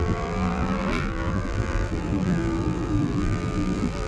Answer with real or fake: fake